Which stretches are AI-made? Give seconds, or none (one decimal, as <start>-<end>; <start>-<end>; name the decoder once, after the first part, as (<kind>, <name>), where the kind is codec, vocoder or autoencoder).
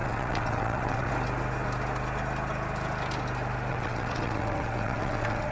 0.0-1.1 (vocoder, WaveNeXt); 3.7-5.5